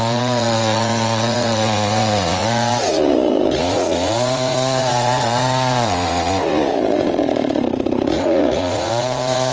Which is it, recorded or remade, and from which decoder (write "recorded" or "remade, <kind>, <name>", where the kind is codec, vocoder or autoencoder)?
remade, vocoder, Vocos